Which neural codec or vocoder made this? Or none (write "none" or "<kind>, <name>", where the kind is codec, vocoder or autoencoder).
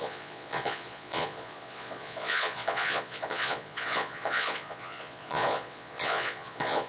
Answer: vocoder, Vocos